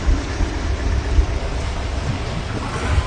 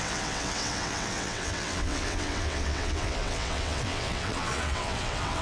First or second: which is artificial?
second